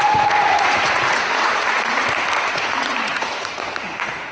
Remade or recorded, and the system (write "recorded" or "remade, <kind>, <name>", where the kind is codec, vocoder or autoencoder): remade, vocoder, Vocos